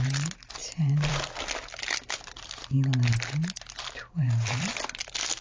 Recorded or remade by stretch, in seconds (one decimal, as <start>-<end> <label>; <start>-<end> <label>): 0.0-0.6 recorded; 0.6-1.2 remade; 1.2-2.0 recorded; 2.0-2.5 remade; 2.5-4.0 recorded; 4.0-4.7 remade; 4.7-5.4 recorded

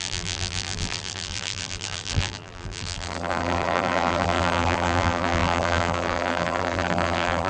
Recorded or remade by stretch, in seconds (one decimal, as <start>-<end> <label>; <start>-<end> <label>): 0.0-7.5 remade

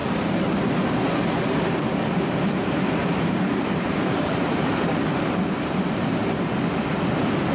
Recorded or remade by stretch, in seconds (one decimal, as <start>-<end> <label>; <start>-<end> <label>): 0.0-3.0 recorded; 3.0-4.9 remade; 4.9-7.5 recorded

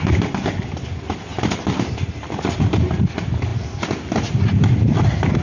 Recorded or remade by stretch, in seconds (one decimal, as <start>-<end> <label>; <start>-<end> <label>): 0.0-1.3 recorded; 1.3-2.0 remade; 2.0-5.4 recorded

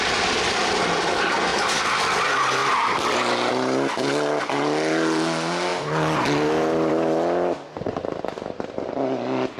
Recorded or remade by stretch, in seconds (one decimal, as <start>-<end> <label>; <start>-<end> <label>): 0.0-1.5 recorded; 1.5-2.0 remade; 2.0-2.6 recorded; 2.6-3.5 remade; 3.5-9.6 recorded

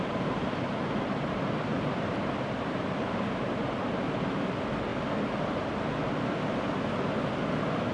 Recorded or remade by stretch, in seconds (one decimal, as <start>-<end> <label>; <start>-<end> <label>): 0.0-1.7 recorded; 1.7-2.7 remade; 2.7-4.9 recorded; 4.9-5.5 remade; 5.5-7.9 recorded

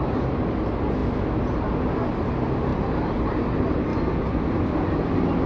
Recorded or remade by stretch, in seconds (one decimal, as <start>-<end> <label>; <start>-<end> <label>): 0.0-5.5 recorded

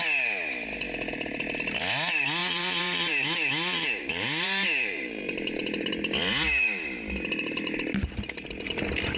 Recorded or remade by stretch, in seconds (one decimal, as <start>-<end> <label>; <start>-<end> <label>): 0.0-2.4 recorded; 2.4-5.9 remade; 5.9-9.2 recorded